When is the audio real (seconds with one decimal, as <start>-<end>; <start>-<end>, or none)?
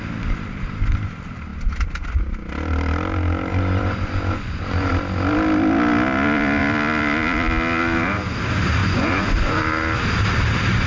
0.0-3.5; 4.9-8.8; 9.6-10.9